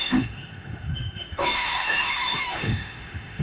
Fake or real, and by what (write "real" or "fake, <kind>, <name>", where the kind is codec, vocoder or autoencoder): fake, autoencoder, DAC-VAE